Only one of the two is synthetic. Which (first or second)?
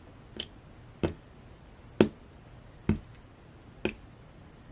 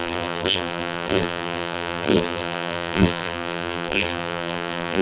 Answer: second